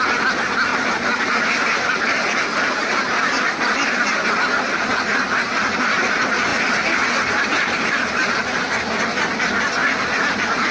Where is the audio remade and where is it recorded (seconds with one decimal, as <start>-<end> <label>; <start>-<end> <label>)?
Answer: 0.0-0.7 recorded; 0.7-4.3 remade; 4.3-6.5 recorded; 6.5-8.5 remade; 8.5-9.8 recorded; 9.8-10.7 remade